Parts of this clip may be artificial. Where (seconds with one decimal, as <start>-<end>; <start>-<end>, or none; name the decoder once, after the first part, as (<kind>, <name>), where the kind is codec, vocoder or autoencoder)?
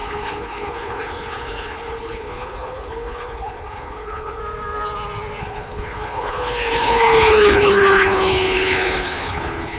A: 0.0-4.4 (codec, HILCodec); 5.4-9.8